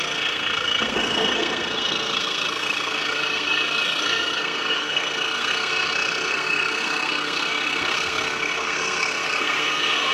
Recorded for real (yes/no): no